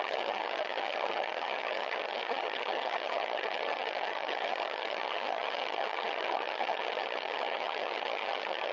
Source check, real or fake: fake